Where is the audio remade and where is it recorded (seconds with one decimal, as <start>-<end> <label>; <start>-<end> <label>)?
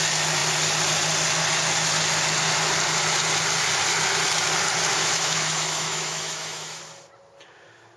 0.0-5.0 recorded; 5.0-6.8 remade; 6.8-8.0 recorded